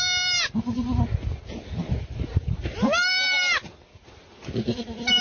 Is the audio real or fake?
real